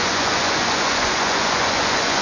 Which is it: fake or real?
fake